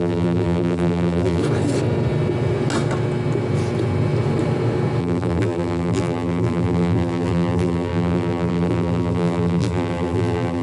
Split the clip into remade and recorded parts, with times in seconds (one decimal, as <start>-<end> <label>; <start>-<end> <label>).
0.0-1.4 remade; 1.4-5.0 recorded; 5.0-10.6 remade